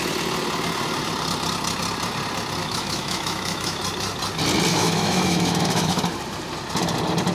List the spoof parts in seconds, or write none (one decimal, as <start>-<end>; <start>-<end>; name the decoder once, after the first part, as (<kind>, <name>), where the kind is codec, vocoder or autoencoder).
2.6-3.8 (autoencoder, DAC-VAE); 4.7-6.0